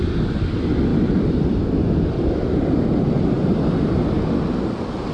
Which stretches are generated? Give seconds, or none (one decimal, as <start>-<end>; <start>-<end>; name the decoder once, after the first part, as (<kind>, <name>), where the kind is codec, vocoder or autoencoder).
0.9-4.0 (vocoder, BigVGAN v2)